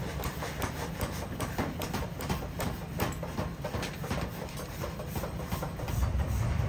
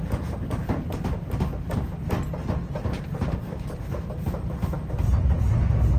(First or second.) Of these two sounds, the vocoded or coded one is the first